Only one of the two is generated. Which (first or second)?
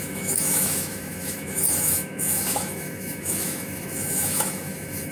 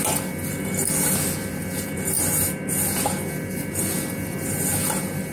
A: first